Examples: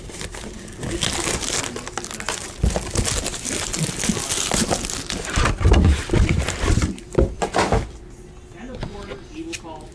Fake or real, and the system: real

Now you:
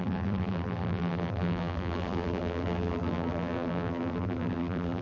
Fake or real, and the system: fake, vocoder, BigVGAN v2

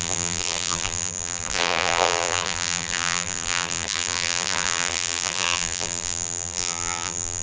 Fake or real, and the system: fake, vocoder, BigVGAN v2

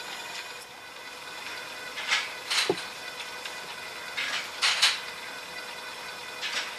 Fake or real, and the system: real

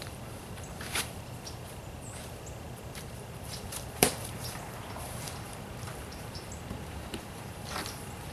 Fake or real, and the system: fake, vocoder, BigVGAN v2